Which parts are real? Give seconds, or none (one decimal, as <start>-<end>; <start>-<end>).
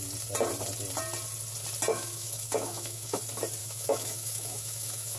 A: 0.0-1.9; 3.2-3.6